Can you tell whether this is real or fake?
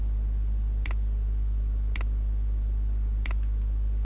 real